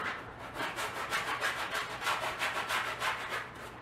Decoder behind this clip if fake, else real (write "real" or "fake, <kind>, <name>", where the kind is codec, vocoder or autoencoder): fake, vocoder, BigVGAN v2